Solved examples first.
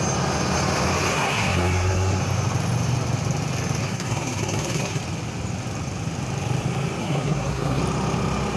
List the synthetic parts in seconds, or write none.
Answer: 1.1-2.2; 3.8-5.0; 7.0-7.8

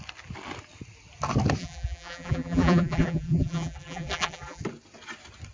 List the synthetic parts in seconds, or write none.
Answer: 1.6-4.6

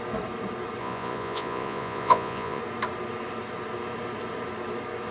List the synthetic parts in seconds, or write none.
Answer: 0.8-2.6

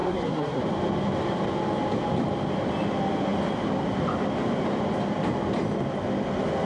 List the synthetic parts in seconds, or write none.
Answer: 0.0-0.6

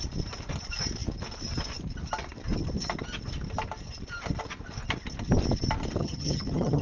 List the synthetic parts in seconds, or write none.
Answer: 6.0-6.8

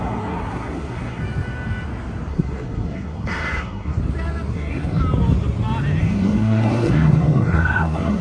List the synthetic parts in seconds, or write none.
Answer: 0.0-1.2; 2.3-4.0; 4.5-5.0; 6.0-8.2